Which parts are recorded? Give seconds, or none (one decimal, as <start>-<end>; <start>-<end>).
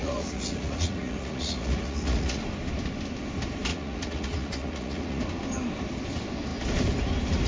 2.4-3.7; 5.2-7.5